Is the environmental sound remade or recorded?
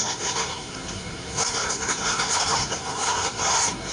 remade